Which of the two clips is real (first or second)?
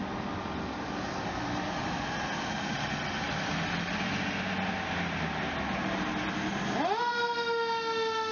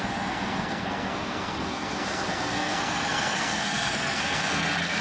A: first